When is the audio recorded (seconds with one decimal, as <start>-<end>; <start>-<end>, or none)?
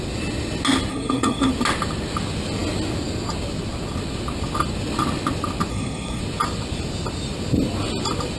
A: 0.0-0.9; 1.5-5.7; 6.2-8.4